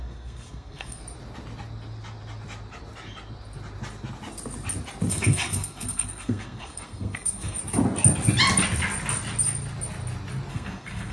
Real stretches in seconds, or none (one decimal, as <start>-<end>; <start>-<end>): 1.0-5.1; 7.6-10.5